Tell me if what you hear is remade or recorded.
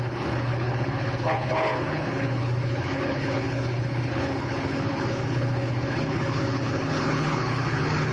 remade